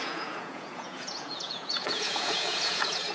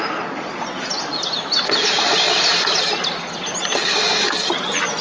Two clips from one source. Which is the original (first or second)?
second